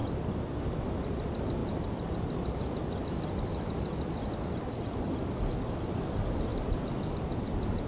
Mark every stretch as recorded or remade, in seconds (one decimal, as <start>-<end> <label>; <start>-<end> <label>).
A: 0.0-7.9 recorded